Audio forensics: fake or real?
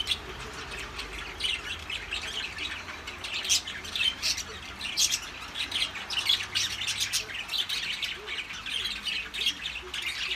real